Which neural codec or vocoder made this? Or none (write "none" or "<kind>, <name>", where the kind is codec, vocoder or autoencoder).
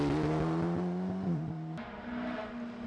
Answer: none